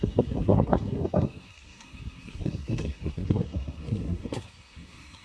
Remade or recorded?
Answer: remade